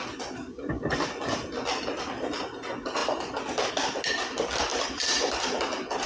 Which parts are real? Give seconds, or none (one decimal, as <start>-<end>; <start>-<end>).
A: 0.0-4.7; 5.6-6.1